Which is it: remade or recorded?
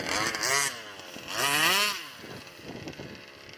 recorded